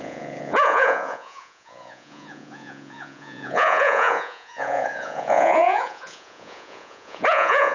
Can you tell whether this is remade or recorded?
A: remade